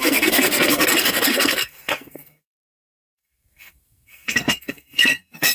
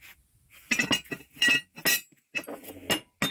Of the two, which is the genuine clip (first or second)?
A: second